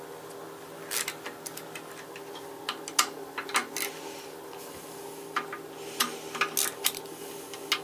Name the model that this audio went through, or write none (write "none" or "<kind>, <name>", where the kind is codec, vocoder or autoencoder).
none